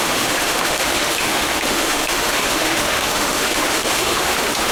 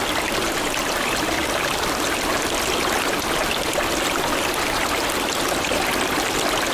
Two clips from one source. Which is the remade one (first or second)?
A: first